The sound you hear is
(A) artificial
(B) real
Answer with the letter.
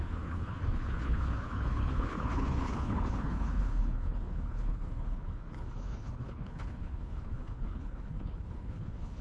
A